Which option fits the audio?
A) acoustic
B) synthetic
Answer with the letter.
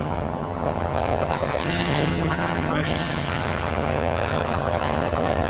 B